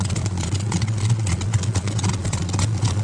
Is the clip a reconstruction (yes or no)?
yes